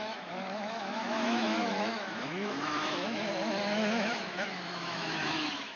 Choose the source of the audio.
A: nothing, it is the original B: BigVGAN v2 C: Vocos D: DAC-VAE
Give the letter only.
D